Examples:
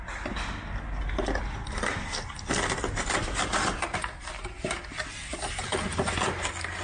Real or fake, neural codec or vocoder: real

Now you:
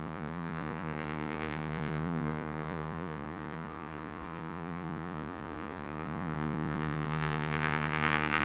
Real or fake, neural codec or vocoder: fake, vocoder, Vocos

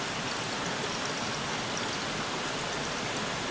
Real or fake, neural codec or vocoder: real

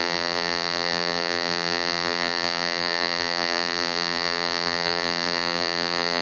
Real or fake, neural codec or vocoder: fake, vocoder, BigVGAN v2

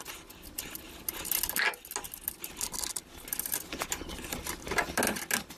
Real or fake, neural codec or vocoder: real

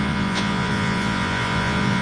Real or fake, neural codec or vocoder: fake, vocoder, Vocos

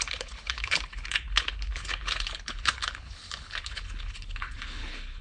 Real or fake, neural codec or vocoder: fake, codec, HILCodec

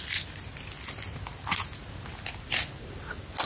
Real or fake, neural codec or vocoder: real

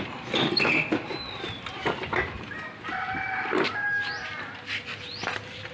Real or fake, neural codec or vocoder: real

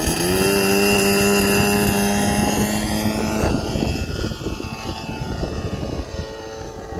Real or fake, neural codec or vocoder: real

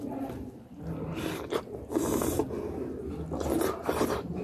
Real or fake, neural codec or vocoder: real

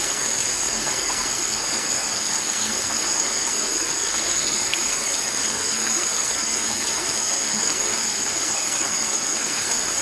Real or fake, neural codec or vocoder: fake, codec, SNAC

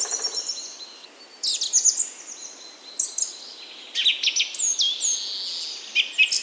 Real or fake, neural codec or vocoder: real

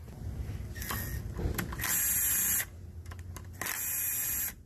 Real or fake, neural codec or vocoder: real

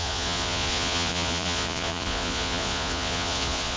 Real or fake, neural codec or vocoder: fake, vocoder, Vocos